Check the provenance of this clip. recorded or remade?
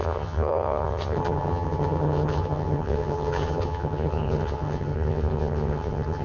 remade